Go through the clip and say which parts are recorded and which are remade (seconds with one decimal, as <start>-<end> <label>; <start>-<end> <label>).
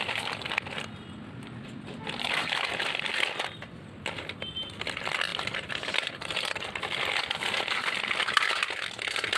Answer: 0.0-9.4 recorded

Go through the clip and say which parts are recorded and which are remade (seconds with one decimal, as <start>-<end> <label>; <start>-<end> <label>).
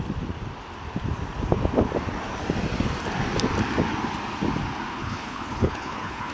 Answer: 0.0-4.9 recorded; 4.9-6.3 remade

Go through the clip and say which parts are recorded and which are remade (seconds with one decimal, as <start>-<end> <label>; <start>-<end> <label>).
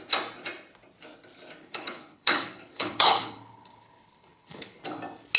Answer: 0.0-1.6 recorded; 1.6-4.8 remade; 4.8-5.4 recorded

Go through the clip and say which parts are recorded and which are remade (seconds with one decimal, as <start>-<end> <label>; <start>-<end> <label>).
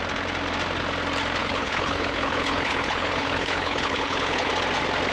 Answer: 0.0-1.4 recorded; 1.4-4.5 remade; 4.5-5.1 recorded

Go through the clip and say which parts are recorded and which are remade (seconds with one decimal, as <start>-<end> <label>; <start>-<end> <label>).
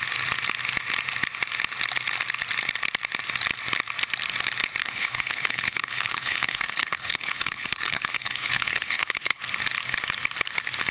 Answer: 0.0-4.8 recorded; 4.8-9.4 remade; 9.4-10.9 recorded